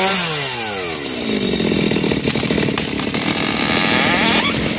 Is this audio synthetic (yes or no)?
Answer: no